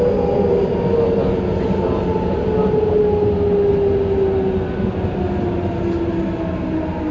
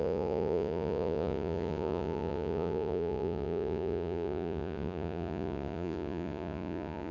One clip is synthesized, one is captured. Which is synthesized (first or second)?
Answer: second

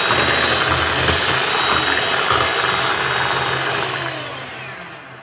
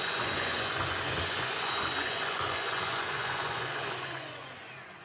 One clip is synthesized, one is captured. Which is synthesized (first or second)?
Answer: second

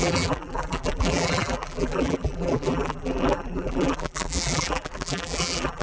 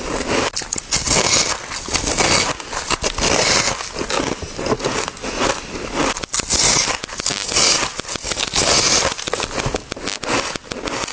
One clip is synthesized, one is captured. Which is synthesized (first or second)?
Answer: first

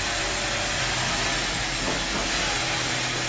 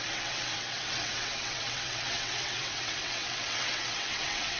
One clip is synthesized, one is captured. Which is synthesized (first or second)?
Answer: second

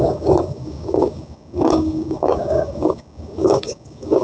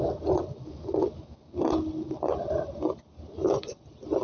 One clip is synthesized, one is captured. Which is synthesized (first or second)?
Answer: first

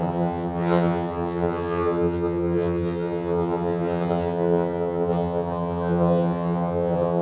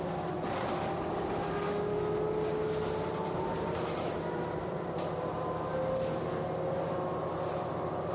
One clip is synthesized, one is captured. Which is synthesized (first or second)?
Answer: first